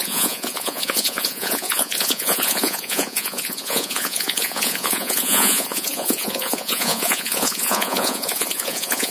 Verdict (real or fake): fake